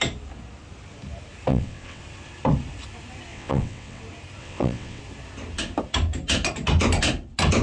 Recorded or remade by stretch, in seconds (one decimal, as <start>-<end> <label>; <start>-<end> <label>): 0.0-1.5 recorded; 1.5-2.0 remade; 2.0-3.3 recorded; 3.3-4.0 remade; 4.0-4.4 recorded; 4.4-5.0 remade; 5.0-7.6 recorded